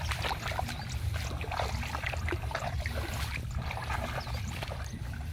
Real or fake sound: real